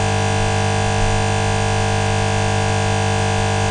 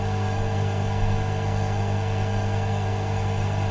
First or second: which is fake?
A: second